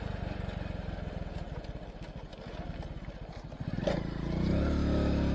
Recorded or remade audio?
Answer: recorded